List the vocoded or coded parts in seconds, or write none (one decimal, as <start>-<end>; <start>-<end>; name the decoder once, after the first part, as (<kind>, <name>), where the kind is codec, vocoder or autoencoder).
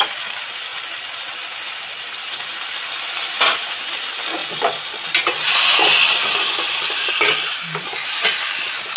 4.4-4.9 (vocoder, BigVGAN v2); 5.8-7.1